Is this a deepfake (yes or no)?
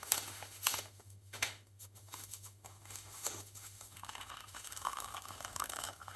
yes